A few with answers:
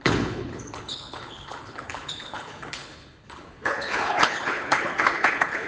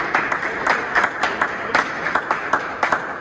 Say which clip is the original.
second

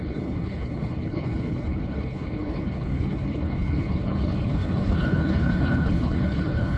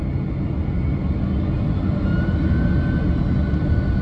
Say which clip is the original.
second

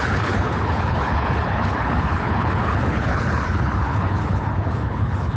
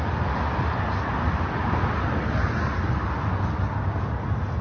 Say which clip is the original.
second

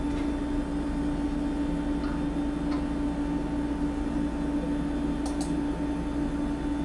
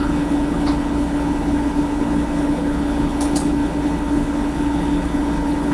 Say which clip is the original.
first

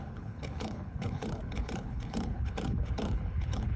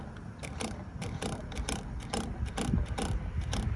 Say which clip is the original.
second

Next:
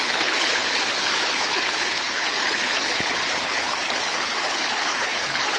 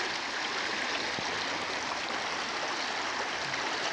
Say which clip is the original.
second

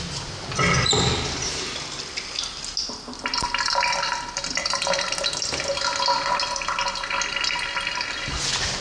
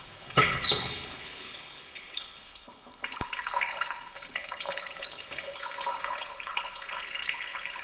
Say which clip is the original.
first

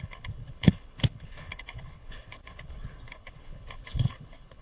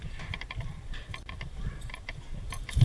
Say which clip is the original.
second